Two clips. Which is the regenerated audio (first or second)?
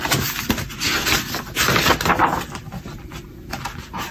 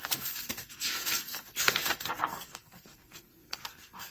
second